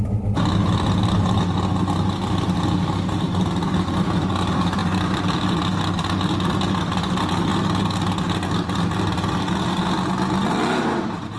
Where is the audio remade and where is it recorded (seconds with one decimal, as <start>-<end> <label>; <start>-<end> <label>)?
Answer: 0.0-11.4 recorded